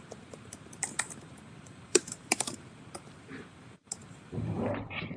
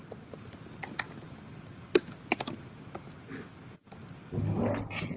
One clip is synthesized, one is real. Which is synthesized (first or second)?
first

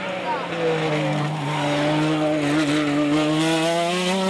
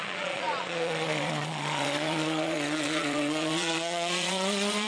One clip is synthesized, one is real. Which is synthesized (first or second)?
second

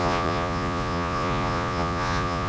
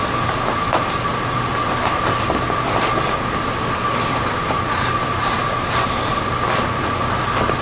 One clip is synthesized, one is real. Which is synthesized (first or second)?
first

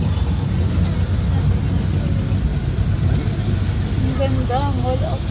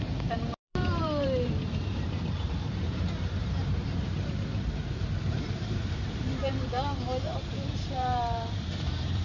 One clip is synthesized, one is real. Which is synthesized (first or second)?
second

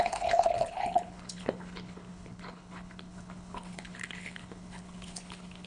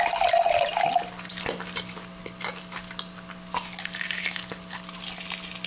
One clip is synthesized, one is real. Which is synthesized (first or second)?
first